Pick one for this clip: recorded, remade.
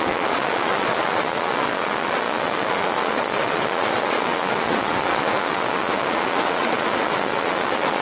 remade